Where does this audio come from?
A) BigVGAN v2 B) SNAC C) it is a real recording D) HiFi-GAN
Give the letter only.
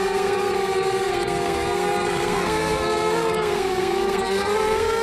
B